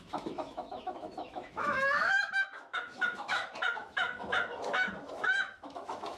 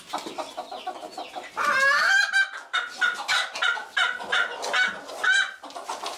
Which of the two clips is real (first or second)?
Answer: second